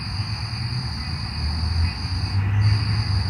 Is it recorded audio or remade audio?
recorded